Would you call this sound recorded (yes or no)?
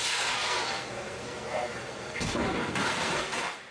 no